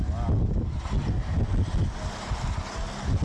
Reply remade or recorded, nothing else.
recorded